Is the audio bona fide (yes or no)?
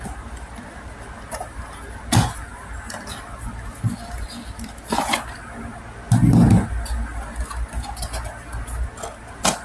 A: yes